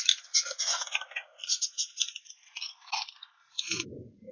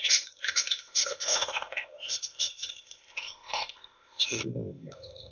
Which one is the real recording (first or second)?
first